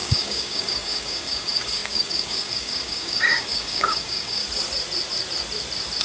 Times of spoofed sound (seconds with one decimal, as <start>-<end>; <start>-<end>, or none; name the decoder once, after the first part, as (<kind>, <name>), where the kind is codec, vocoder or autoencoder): 0.0-4.4 (codec, DAC)